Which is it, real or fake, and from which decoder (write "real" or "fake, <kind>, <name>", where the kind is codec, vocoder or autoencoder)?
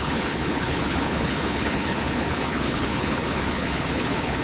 fake, codec, HILCodec